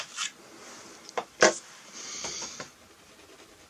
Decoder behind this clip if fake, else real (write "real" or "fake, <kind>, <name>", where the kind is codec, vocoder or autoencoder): real